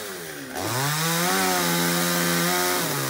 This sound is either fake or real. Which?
real